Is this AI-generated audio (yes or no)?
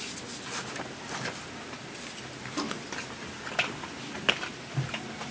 no